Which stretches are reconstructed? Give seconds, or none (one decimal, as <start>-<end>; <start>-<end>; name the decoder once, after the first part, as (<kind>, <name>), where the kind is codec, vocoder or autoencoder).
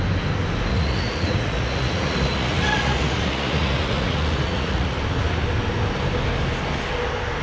0.7-5.0 (vocoder, Vocos)